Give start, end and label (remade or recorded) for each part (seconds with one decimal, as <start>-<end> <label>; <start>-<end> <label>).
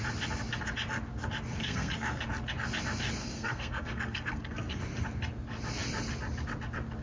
0.0-1.6 recorded; 1.6-2.2 remade; 2.2-3.2 recorded; 3.2-4.8 remade; 4.8-7.0 recorded